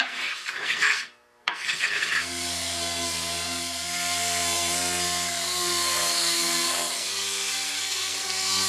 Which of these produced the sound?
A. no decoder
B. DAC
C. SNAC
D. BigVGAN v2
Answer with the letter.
C